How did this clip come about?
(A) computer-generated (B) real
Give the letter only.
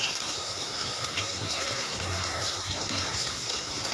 A